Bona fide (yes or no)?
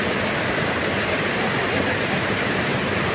yes